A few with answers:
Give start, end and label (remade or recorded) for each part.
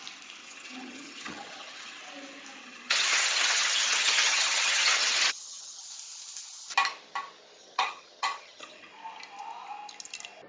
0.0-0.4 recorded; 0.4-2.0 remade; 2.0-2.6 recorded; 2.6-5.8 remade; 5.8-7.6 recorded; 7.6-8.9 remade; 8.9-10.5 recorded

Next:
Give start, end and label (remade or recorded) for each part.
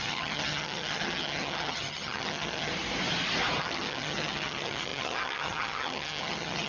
0.0-2.7 remade; 2.7-3.6 recorded; 3.6-6.7 remade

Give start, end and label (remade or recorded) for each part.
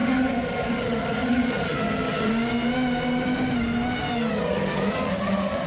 0.0-2.3 remade; 2.3-4.3 recorded; 4.3-5.7 remade